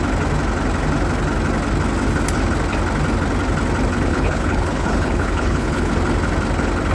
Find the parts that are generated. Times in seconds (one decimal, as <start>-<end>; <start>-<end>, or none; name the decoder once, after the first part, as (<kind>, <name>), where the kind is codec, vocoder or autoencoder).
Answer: 4.1-5.9 (codec, HILCodec)